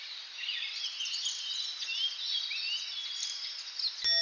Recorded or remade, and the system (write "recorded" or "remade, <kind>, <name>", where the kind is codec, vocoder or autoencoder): recorded